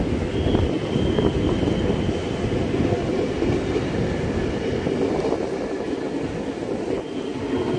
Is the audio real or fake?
real